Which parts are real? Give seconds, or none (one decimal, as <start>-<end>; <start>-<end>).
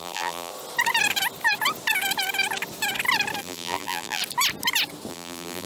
0.5-3.4; 4.2-5.1